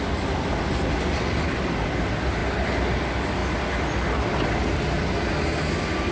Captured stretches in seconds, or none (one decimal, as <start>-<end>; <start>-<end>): 0.0-6.1